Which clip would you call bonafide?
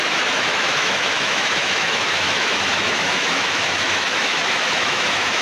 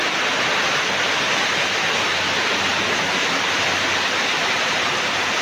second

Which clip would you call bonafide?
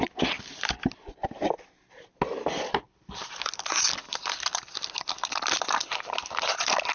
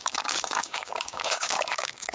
first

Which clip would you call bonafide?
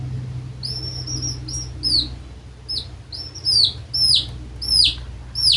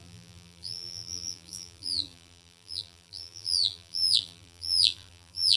first